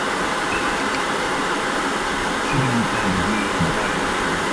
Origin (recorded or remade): recorded